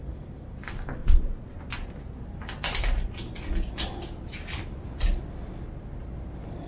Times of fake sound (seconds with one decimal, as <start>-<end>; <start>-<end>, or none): 1.0-1.6